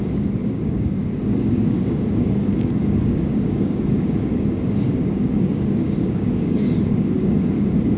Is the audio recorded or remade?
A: remade